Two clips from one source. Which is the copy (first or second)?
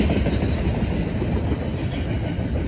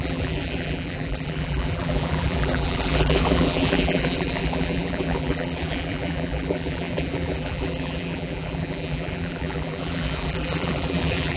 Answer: second